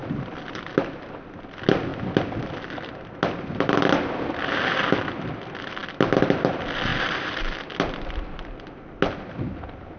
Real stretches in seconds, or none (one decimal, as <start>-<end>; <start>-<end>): 0.0-6.9; 7.4-10.0

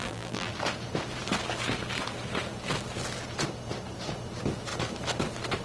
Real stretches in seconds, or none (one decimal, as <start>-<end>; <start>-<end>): 0.5-5.6

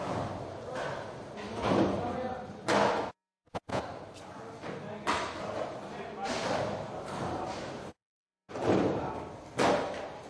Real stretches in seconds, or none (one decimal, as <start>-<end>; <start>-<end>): 0.0-3.1; 3.8-7.9; 8.5-10.3

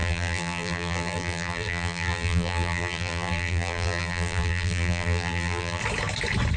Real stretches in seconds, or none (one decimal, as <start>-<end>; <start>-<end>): 5.8-6.6

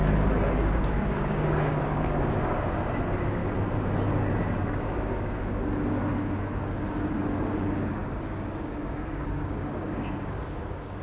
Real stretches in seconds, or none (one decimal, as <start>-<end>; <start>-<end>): 0.0-0.6; 3.4-4.6